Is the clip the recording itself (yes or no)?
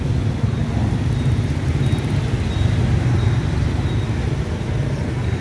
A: yes